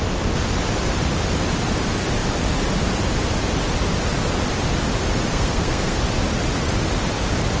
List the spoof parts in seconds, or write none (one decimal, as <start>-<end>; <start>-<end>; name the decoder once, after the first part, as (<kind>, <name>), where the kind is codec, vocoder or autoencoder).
5.3-6.0 (codec, SNAC)